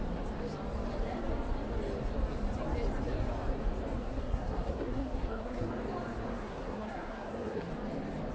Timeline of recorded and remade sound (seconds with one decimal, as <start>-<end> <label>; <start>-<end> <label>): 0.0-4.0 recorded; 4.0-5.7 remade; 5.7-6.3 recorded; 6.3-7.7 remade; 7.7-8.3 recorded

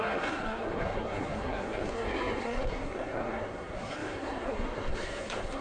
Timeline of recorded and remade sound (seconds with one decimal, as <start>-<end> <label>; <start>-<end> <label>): 0.0-5.6 remade

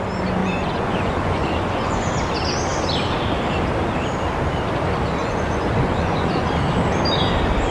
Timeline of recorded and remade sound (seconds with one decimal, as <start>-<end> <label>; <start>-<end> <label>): 0.0-0.4 recorded; 0.4-2.1 remade; 2.1-5.2 recorded; 5.2-6.5 remade; 6.5-7.7 recorded

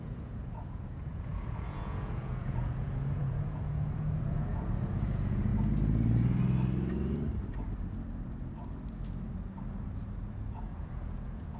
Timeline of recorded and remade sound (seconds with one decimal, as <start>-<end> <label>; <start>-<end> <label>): 0.0-5.5 remade; 5.5-10.5 recorded; 10.5-11.6 remade

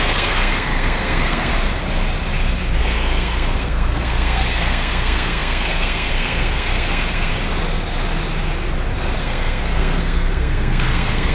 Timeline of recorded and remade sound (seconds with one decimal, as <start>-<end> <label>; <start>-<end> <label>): 0.0-1.5 remade; 1.5-2.8 recorded; 2.8-7.3 remade; 7.3-9.2 recorded; 9.2-11.3 remade